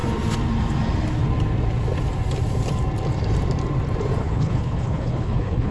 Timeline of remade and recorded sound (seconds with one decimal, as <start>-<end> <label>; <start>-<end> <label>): 0.0-4.2 recorded; 4.2-5.7 remade